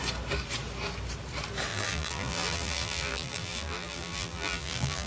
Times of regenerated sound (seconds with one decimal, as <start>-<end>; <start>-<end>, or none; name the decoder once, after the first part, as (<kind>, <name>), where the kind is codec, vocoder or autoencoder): 1.7-5.1 (vocoder, BigVGAN v2)